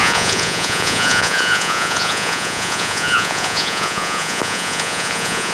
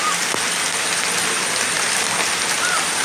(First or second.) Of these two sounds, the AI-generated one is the first